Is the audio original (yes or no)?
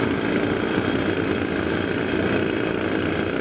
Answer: yes